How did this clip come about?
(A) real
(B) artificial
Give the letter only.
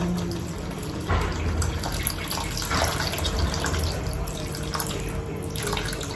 A